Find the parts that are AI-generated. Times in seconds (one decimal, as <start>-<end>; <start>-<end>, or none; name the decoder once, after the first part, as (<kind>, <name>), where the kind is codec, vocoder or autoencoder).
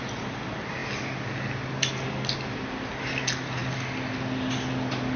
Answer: none